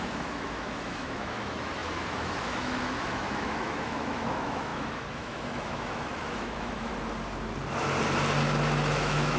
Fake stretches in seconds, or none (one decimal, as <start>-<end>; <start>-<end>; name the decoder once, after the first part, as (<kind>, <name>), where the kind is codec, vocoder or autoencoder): 0.0-6.9 (autoencoder, DAC-VAE); 8.9-9.4